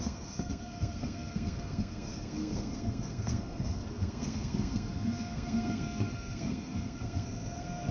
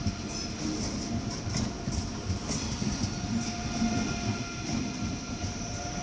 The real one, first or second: second